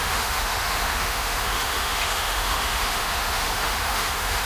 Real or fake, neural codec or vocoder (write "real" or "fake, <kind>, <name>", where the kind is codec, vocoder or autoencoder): fake, autoencoder, DAC-VAE